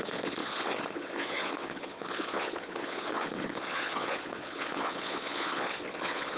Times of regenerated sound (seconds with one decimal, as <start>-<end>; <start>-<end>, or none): 0.0-6.4